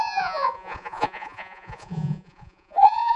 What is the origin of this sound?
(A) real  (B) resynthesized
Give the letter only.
B